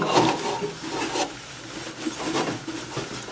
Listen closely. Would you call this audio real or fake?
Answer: real